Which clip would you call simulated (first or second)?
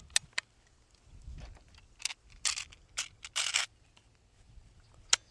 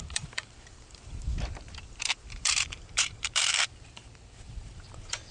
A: second